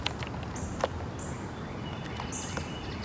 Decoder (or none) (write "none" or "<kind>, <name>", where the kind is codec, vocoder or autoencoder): none